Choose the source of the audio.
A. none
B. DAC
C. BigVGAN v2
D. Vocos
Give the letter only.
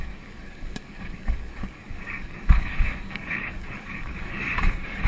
B